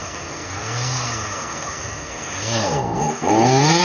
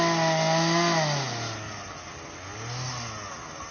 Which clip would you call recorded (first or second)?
second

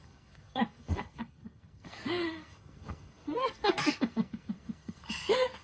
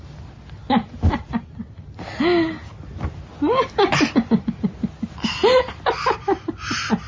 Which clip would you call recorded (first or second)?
second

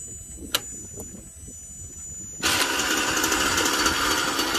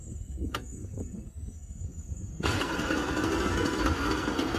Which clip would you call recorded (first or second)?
first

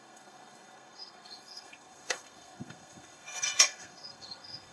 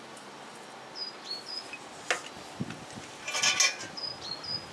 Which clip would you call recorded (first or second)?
second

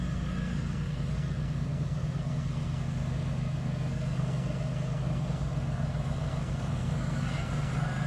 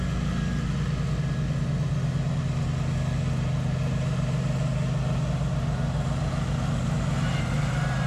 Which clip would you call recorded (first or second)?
second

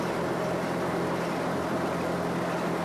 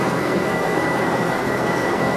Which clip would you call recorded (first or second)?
first